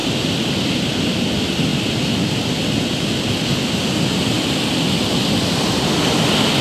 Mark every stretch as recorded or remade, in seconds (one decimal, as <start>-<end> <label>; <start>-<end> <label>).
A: 0.0-1.7 remade; 1.7-5.6 recorded; 5.6-6.6 remade